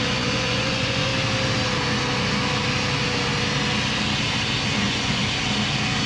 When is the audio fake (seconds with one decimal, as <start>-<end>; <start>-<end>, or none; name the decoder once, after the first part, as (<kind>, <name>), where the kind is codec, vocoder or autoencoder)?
0.0-1.1 (vocoder, Vocos); 4.8-5.2